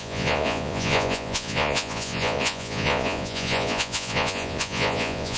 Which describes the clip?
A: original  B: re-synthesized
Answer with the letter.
B